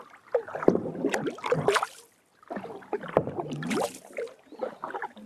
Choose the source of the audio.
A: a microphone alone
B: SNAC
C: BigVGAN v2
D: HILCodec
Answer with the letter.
A